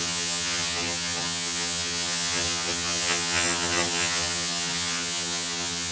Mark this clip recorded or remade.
remade